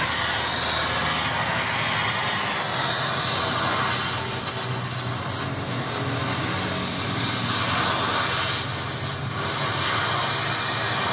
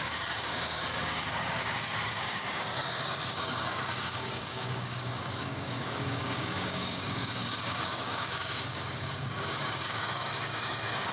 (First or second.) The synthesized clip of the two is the second